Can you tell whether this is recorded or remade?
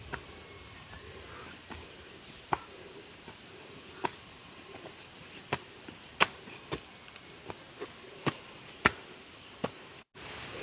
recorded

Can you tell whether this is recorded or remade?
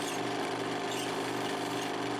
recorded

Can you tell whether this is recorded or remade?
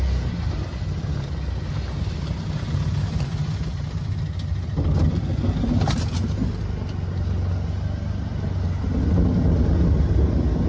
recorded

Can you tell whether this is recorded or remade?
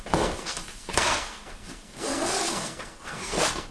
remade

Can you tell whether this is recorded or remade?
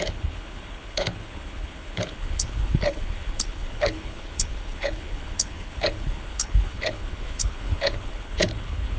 remade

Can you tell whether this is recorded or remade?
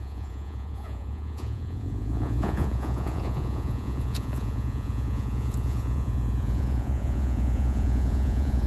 remade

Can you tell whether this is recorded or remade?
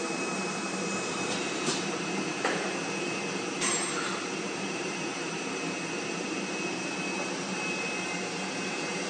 remade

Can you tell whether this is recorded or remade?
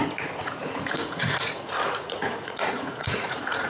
remade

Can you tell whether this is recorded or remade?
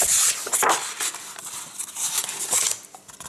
recorded